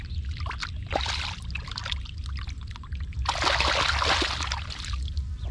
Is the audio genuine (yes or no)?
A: yes